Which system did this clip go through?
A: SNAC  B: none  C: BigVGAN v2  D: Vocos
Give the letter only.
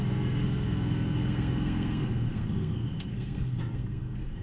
A